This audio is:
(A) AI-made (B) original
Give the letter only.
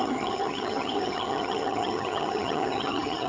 A